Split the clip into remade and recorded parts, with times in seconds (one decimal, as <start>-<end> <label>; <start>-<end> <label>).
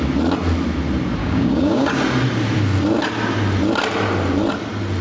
0.0-1.2 recorded; 1.2-1.9 remade; 1.9-5.0 recorded